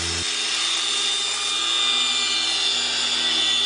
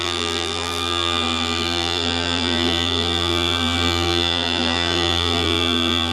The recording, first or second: first